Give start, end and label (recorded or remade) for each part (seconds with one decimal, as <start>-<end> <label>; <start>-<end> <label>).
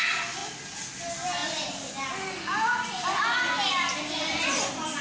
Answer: 0.0-5.0 recorded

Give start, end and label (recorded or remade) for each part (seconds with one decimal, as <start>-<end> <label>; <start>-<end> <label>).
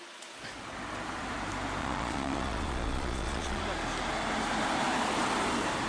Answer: 0.0-1.8 recorded; 1.8-3.6 remade; 3.6-5.9 recorded